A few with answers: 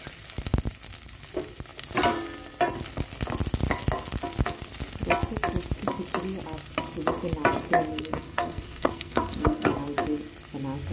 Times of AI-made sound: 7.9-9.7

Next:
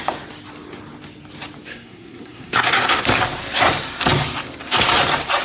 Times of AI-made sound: 1.7-3.0

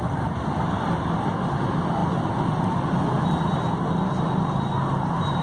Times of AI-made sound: none

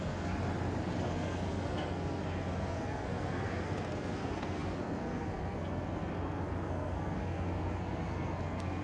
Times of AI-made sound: 0.0-0.4; 1.0-8.8

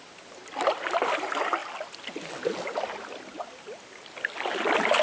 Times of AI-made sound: none

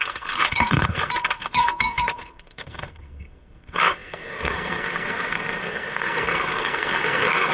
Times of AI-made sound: 0.0-7.5

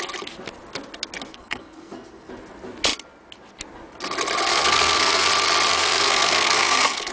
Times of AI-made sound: 1.3-2.3; 4.5-5.3; 5.7-7.1

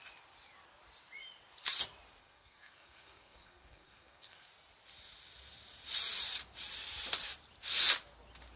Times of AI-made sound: 2.2-4.5